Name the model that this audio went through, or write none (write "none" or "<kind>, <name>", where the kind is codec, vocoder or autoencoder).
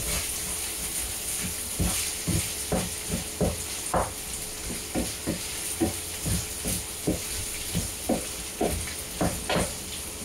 none